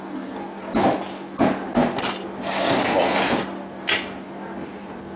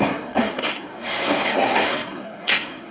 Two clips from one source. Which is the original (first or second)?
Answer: first